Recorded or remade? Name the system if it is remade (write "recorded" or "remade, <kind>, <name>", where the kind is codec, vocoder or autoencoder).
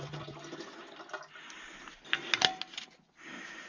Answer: recorded